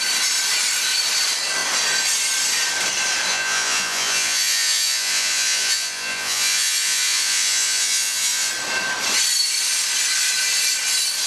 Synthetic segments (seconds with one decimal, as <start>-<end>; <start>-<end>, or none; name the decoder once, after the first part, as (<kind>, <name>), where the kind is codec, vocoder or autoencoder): 3.3-8.5 (vocoder, Vocos)